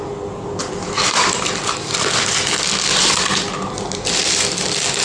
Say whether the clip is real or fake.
real